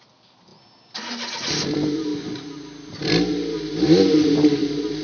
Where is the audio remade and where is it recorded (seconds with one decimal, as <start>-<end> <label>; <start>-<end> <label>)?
0.0-5.0 recorded